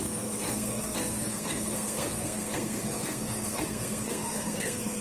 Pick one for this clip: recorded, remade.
remade